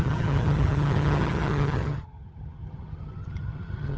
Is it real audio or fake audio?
fake